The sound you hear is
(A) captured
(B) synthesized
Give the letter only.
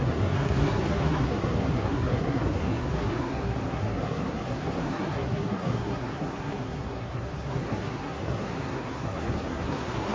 B